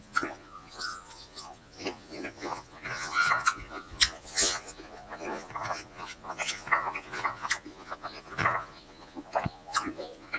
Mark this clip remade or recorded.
remade